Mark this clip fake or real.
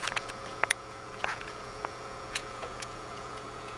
fake